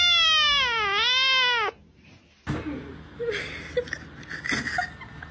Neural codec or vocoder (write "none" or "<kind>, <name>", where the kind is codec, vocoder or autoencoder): none